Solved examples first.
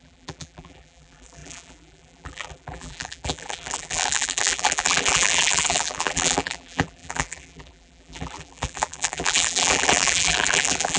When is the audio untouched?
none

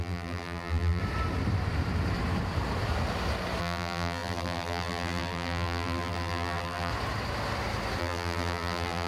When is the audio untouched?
1.0-3.6; 6.9-8.0

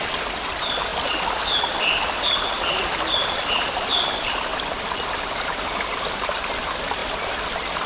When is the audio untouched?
0.9-1.6; 4.5-5.8

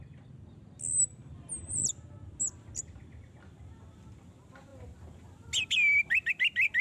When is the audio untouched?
0.0-6.8

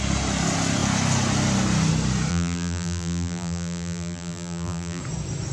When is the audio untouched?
0.0-2.3; 5.0-5.5